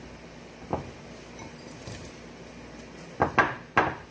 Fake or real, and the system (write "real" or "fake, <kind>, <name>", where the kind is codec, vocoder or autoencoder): real